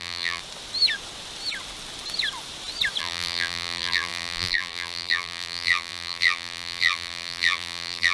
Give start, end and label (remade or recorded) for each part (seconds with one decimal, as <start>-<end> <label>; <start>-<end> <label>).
0.0-0.4 remade; 0.4-3.0 recorded; 3.0-8.1 remade